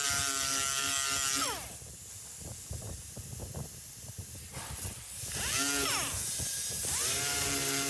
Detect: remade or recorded recorded